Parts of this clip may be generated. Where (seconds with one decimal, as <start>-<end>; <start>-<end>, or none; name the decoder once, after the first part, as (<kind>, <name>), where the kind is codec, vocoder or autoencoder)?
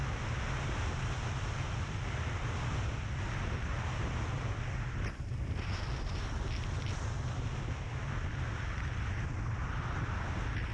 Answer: none